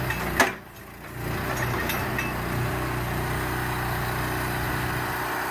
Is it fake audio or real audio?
real